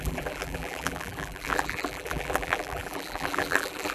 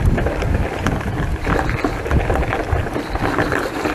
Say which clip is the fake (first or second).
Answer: first